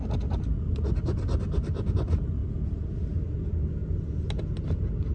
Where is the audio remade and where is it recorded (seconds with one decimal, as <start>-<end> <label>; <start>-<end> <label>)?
0.0-5.1 recorded